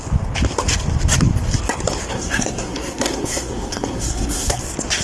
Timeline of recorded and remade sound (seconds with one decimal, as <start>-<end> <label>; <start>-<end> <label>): 0.0-2.1 recorded; 2.1-4.6 remade; 4.6-5.0 recorded